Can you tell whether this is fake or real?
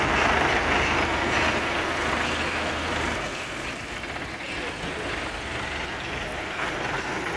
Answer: fake